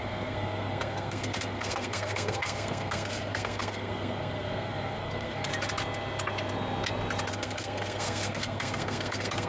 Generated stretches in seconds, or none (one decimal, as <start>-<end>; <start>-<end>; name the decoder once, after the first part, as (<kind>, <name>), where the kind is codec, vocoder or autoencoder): 0.0-5.5 (codec, SNAC); 7.3-9.5